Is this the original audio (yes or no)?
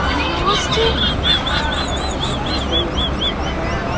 yes